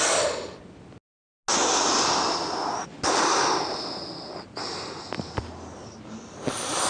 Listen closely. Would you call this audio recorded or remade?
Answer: recorded